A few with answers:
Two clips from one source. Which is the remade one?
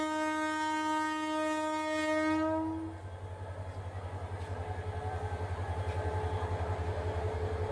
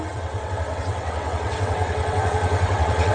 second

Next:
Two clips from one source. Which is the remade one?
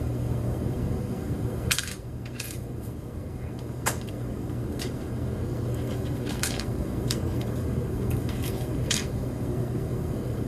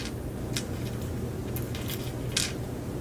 first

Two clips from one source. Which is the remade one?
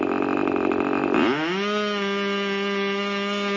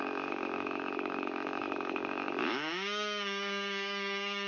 second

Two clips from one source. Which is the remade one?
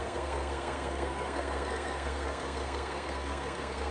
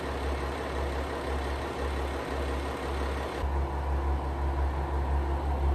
first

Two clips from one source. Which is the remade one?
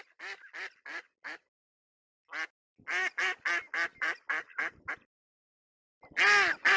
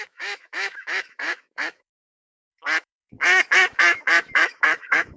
second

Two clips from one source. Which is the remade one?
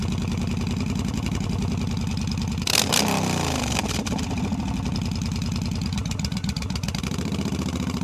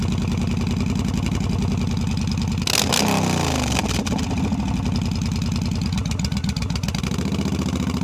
first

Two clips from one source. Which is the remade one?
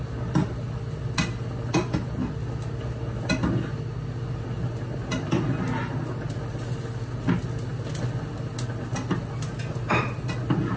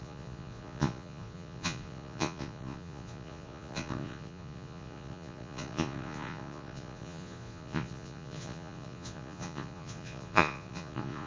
second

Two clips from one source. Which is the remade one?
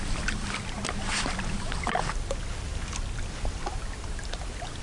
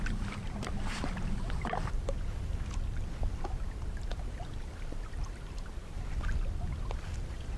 second